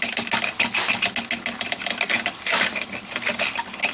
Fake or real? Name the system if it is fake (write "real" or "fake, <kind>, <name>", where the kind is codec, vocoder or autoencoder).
real